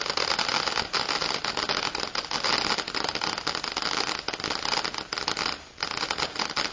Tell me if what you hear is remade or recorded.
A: recorded